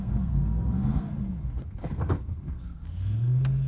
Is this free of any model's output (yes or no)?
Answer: no